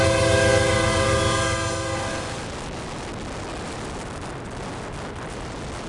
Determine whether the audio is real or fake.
real